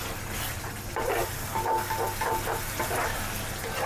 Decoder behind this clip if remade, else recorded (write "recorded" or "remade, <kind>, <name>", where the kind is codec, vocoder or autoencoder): recorded